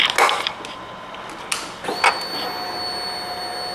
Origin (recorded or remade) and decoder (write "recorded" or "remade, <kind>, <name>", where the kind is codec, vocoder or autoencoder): recorded